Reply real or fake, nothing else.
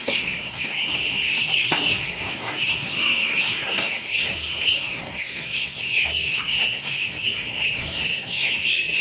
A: fake